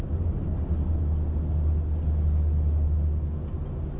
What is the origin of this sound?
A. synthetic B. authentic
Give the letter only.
B